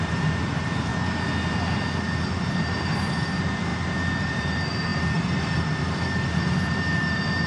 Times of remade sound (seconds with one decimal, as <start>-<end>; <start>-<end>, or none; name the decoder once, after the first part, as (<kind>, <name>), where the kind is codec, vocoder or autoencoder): 0.0-0.9 (vocoder, BigVGAN v2); 2.3-7.5